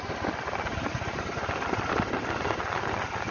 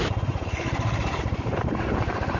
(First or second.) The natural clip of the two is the first